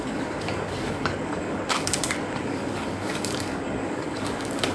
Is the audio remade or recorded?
remade